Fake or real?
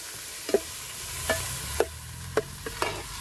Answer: real